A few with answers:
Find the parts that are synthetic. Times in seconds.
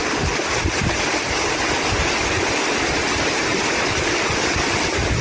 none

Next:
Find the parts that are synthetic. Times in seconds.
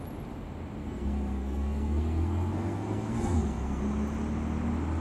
0.8-3.8 (codec, SNAC)